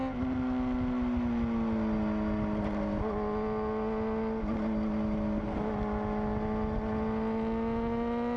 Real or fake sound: real